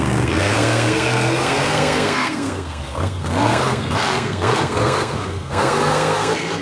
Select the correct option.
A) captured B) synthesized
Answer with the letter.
B